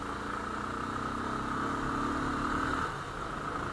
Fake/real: real